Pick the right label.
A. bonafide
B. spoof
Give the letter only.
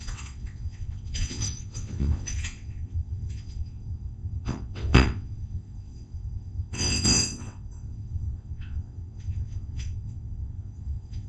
B